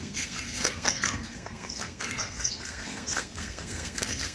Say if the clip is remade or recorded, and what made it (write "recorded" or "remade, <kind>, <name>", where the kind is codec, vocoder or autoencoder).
remade, codec, SNAC